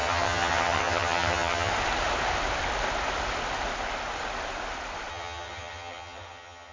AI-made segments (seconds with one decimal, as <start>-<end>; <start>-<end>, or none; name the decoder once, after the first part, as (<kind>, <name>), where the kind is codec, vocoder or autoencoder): 0.0-1.7 (vocoder, HiFi-GAN); 5.1-6.7